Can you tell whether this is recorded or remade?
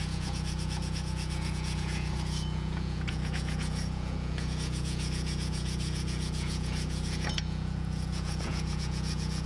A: remade